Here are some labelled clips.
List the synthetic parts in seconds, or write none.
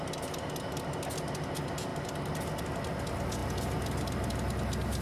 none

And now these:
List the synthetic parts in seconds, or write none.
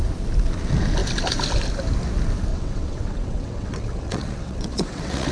2.5-5.3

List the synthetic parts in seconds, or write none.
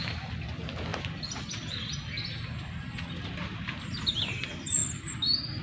none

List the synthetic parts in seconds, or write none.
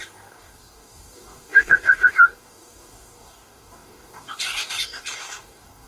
0.0-5.9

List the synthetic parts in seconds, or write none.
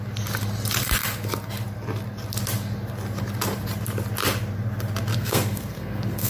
5.1-6.3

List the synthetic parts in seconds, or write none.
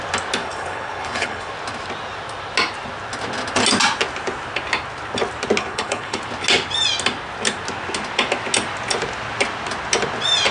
0.4-1.5; 5.6-6.2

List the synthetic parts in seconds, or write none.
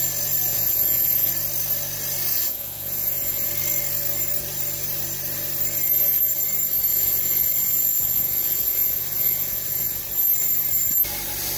0.5-1.3; 2.3-3.5; 6.9-10.0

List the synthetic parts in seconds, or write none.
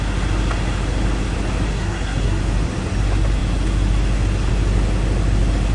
1.7-2.4